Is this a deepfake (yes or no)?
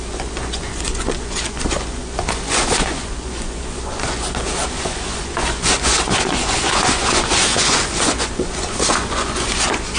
yes